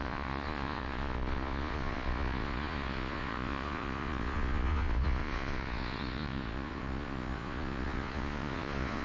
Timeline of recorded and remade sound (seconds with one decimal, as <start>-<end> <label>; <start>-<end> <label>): 0.0-9.0 remade